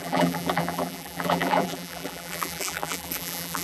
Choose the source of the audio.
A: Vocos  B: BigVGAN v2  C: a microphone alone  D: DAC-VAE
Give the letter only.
B